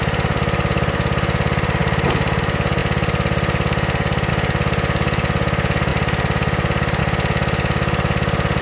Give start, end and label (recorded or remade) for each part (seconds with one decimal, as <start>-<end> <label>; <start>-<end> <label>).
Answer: 0.0-1.8 recorded; 1.8-2.4 remade; 2.4-8.6 recorded